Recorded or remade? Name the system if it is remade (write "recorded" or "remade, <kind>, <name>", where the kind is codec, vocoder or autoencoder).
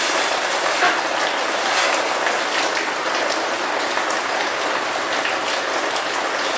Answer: recorded